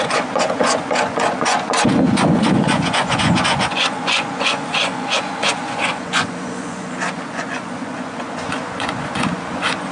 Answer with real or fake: fake